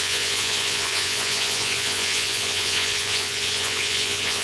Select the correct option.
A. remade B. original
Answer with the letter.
A